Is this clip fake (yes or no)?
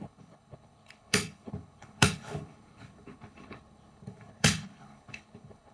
yes